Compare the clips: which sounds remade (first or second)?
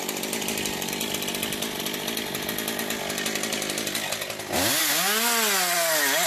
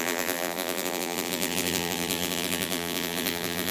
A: second